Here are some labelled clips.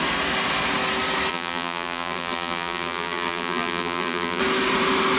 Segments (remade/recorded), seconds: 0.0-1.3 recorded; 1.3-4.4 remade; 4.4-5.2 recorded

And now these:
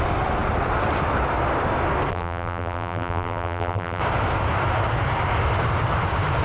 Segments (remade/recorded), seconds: 0.0-2.1 recorded; 2.1-4.0 remade; 4.0-6.4 recorded

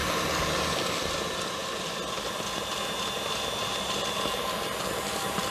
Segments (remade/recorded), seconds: 0.0-0.6 recorded; 0.6-5.5 remade